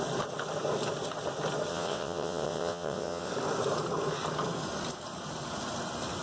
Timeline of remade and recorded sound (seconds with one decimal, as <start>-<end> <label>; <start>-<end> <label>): 0.0-1.7 recorded; 1.7-3.3 remade; 3.3-6.2 recorded